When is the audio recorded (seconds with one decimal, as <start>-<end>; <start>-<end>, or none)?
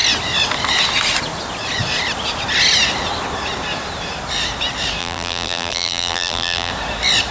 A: 0.0-5.0; 6.7-7.3